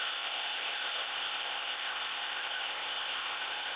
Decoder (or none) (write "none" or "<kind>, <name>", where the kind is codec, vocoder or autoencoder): codec, ZipCodec